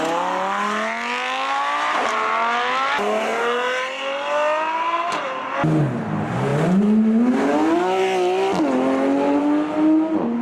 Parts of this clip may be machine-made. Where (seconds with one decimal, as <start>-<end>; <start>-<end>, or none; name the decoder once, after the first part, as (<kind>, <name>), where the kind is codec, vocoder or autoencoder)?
none